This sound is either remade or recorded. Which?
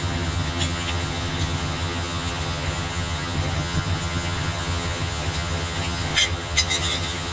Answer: remade